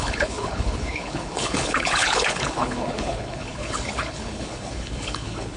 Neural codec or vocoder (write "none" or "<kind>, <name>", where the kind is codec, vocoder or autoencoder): codec, HILCodec